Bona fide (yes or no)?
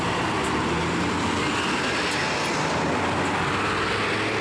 yes